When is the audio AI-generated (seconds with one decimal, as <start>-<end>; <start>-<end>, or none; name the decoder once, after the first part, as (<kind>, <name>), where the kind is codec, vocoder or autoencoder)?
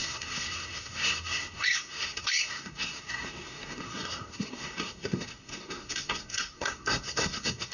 0.0-7.7 (codec, SNAC)